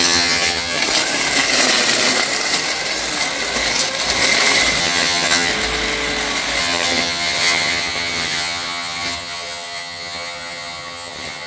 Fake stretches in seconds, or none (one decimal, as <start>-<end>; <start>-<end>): 0.0-0.8; 4.8-5.5; 6.6-11.5